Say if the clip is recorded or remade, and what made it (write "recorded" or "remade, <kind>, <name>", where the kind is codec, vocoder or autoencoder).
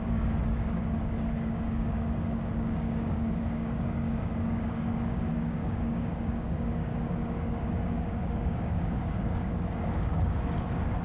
remade, codec, DAC